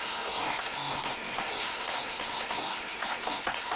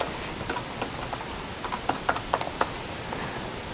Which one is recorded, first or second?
second